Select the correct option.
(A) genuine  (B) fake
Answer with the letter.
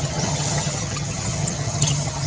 B